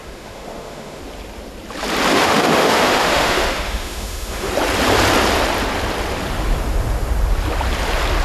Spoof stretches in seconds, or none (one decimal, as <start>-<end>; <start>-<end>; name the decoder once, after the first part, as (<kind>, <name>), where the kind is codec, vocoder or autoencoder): 0.0-1.0 (autoencoder, DAC-VAE); 2.1-4.5